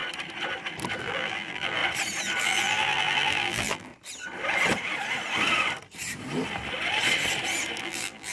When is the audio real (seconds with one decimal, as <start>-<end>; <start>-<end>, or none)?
0.0-1.0; 1.8-2.4; 3.9-7.8